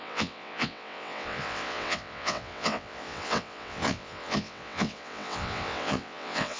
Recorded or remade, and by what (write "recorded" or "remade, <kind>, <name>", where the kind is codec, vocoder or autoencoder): remade, vocoder, WaveNeXt